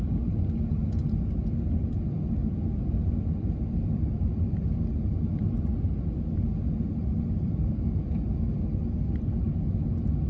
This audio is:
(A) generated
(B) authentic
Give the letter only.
B